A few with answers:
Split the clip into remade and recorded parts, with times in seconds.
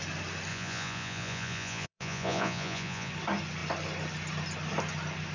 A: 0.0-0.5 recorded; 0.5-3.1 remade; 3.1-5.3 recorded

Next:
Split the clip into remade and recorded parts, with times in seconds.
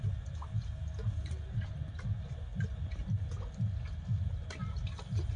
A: 0.0-5.4 recorded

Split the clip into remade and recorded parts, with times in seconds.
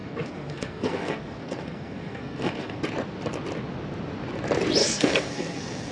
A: 0.0-2.8 remade; 2.8-4.8 recorded; 4.8-5.9 remade